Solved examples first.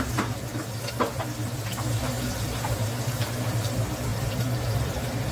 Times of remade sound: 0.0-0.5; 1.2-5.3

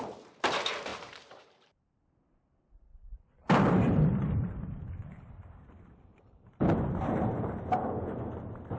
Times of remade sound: 0.9-2.0; 2.9-6.6

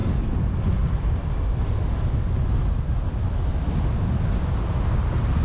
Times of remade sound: 0.0-3.2

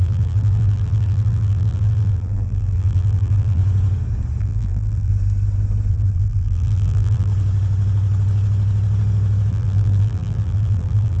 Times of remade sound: 0.0-3.6; 4.4-5.1; 5.9-7.3; 9.5-11.2

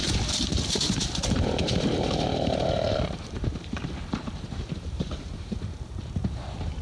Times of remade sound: 0.0-6.8

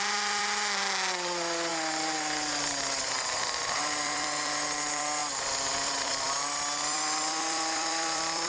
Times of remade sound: 0.0-1.7; 3.8-8.5